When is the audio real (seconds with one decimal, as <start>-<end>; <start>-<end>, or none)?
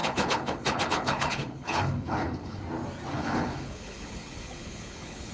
2.6-3.1